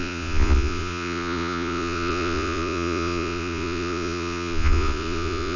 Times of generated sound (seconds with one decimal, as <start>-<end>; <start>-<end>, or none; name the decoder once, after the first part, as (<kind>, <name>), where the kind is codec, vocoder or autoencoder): 0.0-5.6 (vocoder, Vocos)